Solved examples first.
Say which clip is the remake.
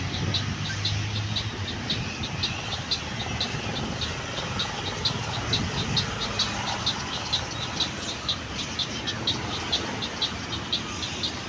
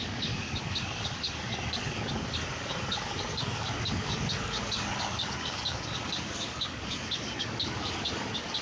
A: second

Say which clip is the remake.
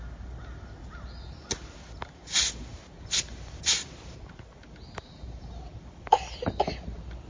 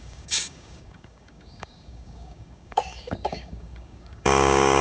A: second